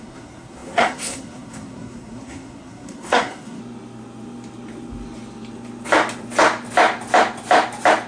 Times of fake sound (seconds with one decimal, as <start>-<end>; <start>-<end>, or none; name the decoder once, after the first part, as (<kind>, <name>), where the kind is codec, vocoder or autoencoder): 0.0-3.6 (codec, SNAC)